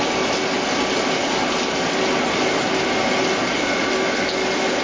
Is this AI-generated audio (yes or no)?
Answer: no